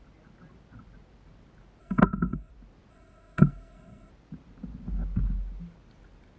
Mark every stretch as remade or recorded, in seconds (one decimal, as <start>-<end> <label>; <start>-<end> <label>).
0.0-1.8 recorded; 1.8-2.5 remade; 2.5-2.9 recorded; 2.9-4.1 remade; 4.1-6.4 recorded